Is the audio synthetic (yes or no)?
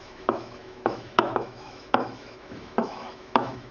yes